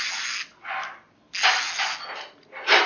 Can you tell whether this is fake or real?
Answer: real